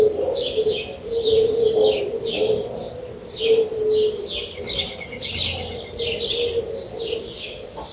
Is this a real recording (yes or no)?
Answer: yes